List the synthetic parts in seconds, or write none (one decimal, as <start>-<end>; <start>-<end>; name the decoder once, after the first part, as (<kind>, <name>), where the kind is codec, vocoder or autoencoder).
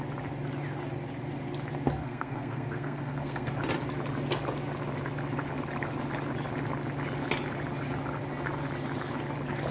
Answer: 2.0-3.5 (codec, SNAC)